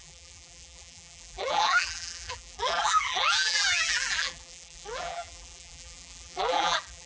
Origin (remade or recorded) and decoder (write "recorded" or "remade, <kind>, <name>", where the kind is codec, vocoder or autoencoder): remade, vocoder, BigVGAN v2